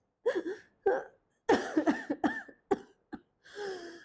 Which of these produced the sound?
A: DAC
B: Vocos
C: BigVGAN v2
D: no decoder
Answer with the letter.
D